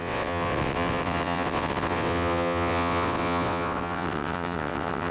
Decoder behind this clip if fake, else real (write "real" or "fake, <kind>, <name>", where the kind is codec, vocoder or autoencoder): fake, vocoder, WaveNeXt